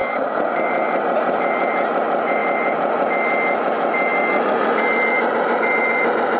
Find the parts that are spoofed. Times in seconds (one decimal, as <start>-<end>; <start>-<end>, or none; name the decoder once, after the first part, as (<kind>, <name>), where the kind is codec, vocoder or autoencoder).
none